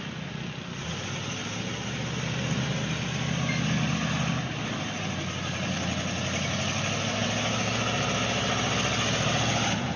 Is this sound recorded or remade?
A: recorded